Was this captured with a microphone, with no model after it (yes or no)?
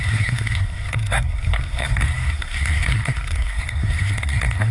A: no